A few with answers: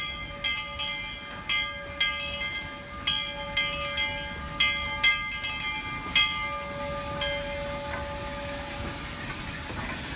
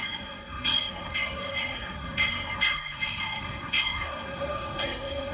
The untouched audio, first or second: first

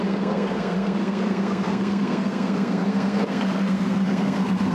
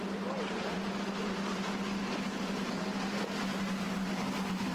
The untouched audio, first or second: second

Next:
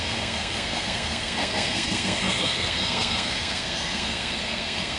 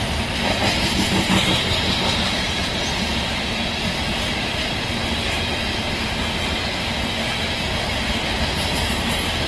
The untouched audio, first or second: second